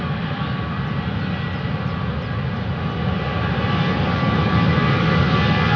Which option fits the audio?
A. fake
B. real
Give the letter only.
B